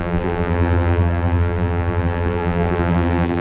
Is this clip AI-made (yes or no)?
yes